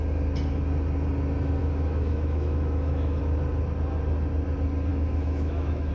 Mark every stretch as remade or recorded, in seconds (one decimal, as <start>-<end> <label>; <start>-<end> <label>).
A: 0.0-1.6 recorded; 1.6-3.2 remade; 3.2-4.9 recorded; 4.9-5.9 remade